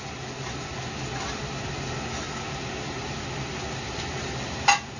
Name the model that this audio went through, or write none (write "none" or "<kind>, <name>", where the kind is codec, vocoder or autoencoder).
none